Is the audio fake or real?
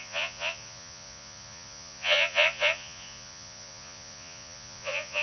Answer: fake